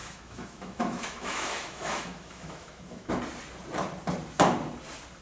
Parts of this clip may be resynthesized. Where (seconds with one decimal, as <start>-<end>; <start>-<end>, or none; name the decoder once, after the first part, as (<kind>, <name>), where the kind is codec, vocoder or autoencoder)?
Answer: 0.0-3.1 (autoencoder, DAC-VAE)